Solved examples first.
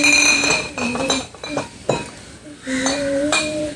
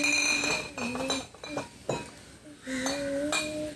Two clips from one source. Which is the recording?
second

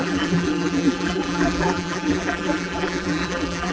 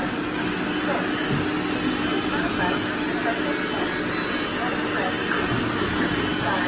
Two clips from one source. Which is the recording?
second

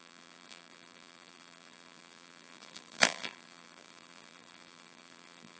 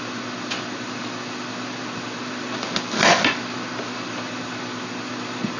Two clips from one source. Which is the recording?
second